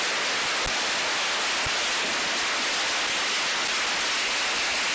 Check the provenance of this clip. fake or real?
real